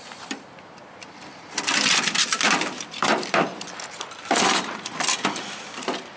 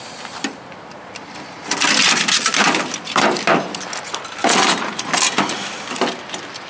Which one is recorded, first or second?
second